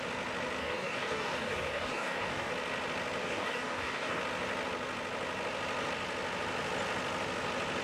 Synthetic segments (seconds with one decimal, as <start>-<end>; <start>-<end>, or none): 0.6-2.5; 3.2-4.2